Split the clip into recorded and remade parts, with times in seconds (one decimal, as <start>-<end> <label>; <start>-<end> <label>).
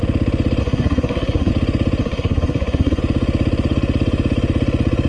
0.0-0.6 recorded; 0.6-1.5 remade; 1.5-2.0 recorded; 2.0-3.0 remade; 3.0-5.1 recorded